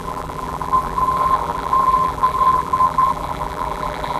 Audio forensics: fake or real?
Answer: fake